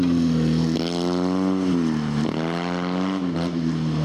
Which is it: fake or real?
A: real